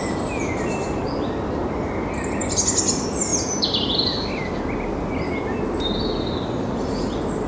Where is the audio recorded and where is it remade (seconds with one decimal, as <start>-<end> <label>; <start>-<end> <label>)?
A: 0.0-7.5 recorded